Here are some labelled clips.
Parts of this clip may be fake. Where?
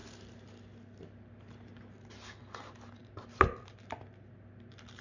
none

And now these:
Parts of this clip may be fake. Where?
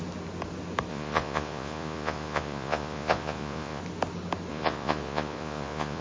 0.9-3.8 (vocoder, Vocos); 4.5-6.0